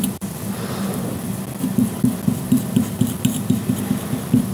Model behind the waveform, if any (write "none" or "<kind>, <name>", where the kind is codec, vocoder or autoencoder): none